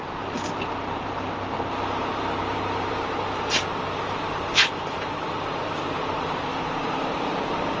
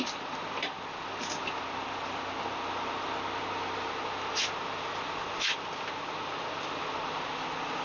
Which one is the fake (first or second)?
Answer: first